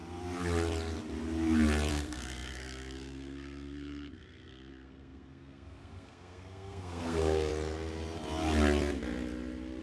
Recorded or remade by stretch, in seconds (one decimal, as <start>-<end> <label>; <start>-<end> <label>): 0.0-1.9 recorded; 1.9-7.5 remade; 7.5-9.8 recorded